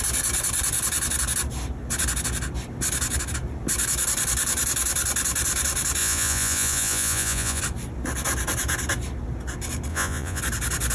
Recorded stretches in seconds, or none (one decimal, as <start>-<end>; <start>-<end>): 0.0-6.0; 7.6-9.9; 10.4-10.9